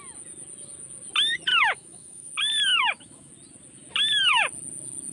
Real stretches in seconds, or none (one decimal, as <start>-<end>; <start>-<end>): 0.0-1.5; 2.3-2.7; 3.3-5.1